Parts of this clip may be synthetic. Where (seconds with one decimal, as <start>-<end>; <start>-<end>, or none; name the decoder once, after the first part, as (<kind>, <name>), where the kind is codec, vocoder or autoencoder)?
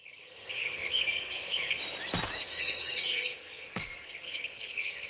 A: 0.0-1.8 (codec, SNAC); 2.4-5.1